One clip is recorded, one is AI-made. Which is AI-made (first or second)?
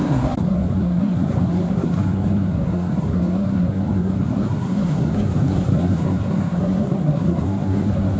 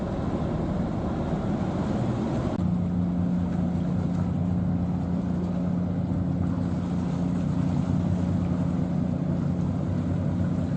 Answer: first